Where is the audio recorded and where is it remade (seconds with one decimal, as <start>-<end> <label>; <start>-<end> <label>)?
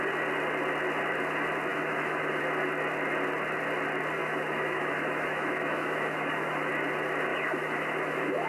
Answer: 0.0-1.7 recorded; 1.7-2.4 remade; 2.4-4.2 recorded; 4.2-6.7 remade; 6.7-7.3 recorded; 7.3-8.5 remade